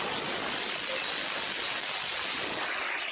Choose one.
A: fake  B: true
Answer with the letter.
B